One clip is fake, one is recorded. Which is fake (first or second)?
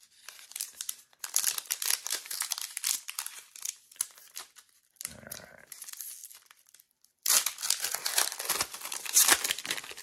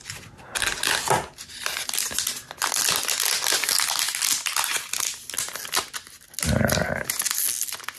first